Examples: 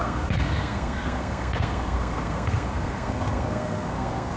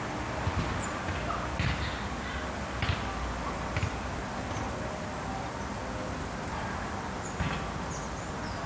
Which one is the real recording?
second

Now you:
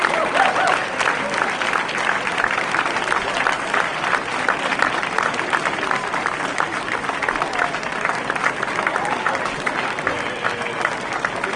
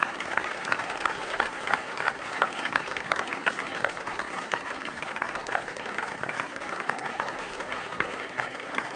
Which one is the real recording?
first